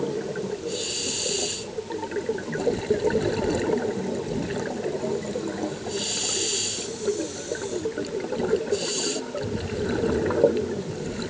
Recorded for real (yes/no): yes